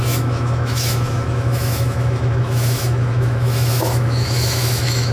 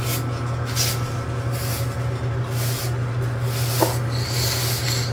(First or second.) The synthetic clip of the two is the first